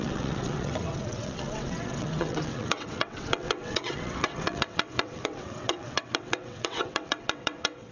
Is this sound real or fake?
fake